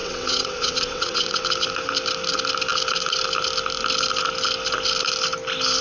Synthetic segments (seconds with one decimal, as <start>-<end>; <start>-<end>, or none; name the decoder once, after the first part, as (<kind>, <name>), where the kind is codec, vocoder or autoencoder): 0.0-1.4 (vocoder, WaveNeXt)